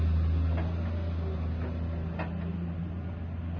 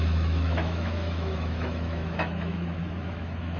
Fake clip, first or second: second